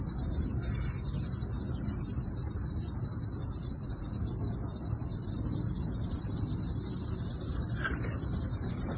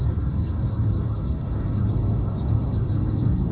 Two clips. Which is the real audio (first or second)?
first